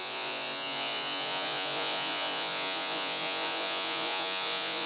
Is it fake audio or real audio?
fake